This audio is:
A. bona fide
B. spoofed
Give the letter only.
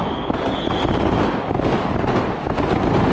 A